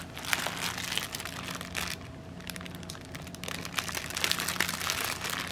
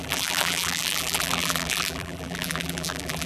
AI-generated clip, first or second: second